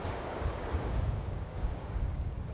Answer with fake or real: fake